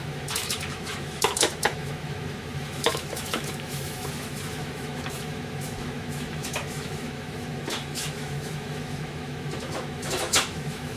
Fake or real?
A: fake